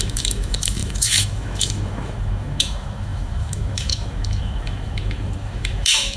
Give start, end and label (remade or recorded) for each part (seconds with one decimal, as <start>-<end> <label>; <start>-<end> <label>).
0.0-6.2 remade